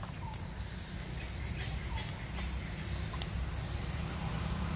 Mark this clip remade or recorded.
recorded